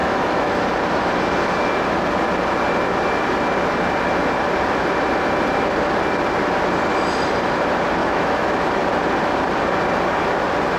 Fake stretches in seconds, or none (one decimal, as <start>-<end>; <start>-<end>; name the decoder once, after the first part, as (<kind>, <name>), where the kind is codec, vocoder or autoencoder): 0.0-0.6 (autoencoder, DAC-VAE); 8.0-8.7